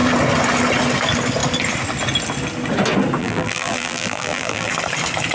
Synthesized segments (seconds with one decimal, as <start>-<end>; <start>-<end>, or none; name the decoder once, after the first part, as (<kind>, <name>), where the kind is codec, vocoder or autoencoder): 3.2-4.7 (vocoder, BigVGAN v2)